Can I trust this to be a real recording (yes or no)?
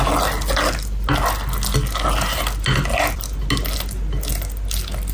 yes